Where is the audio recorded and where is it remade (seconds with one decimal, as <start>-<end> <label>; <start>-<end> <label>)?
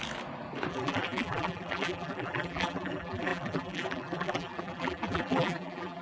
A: 0.0-0.7 recorded; 0.7-6.0 remade